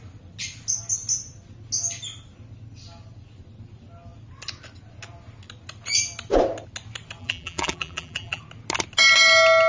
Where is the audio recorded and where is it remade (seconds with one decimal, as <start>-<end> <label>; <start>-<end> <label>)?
0.0-7.2 recorded; 7.2-8.4 remade; 8.4-9.7 recorded

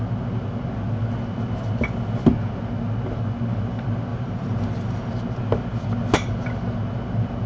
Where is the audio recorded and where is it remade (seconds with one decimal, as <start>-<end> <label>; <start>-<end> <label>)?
0.0-4.1 recorded; 4.1-5.1 remade; 5.1-7.5 recorded

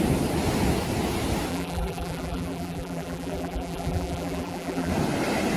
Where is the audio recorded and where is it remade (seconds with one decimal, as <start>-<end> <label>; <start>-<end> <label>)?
0.0-1.5 recorded; 1.5-4.9 remade; 4.9-5.6 recorded

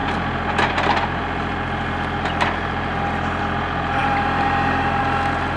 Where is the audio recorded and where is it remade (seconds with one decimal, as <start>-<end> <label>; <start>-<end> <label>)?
0.0-4.0 recorded; 4.0-5.0 remade; 5.0-5.6 recorded

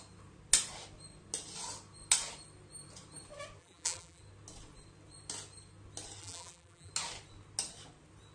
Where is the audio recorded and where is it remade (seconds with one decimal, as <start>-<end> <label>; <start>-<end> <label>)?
0.0-3.6 recorded; 3.6-4.2 remade; 4.2-6.2 recorded; 6.2-6.9 remade; 6.9-8.3 recorded

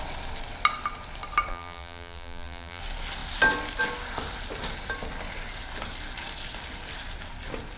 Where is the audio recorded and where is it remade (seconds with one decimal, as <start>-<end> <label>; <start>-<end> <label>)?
0.0-1.5 recorded; 1.5-2.8 remade; 2.8-7.8 recorded

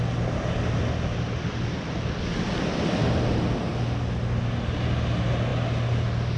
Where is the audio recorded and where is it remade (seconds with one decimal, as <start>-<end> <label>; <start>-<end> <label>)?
0.0-6.4 recorded

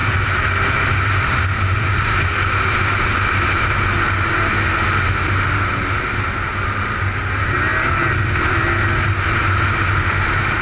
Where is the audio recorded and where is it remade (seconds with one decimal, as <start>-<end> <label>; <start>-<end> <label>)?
0.0-10.6 recorded